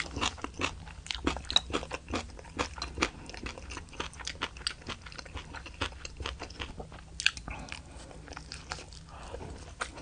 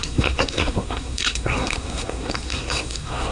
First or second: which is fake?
second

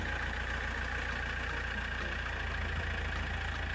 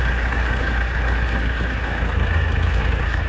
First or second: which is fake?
second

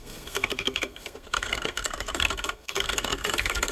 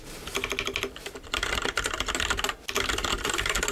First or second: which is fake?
first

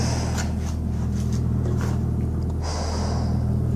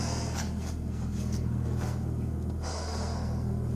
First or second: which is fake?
second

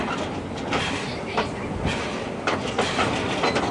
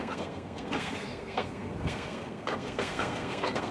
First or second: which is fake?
second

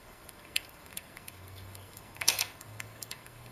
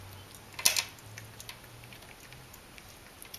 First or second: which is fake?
first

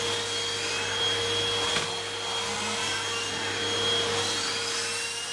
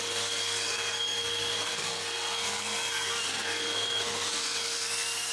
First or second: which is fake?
second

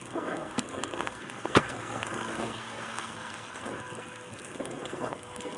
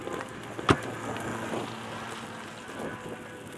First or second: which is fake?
first